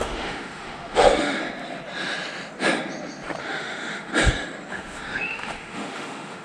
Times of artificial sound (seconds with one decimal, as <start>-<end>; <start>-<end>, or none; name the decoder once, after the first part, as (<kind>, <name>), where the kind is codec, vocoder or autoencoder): 0.0-1.4 (autoencoder, DAC-VAE); 3.4-4.1; 4.7-6.4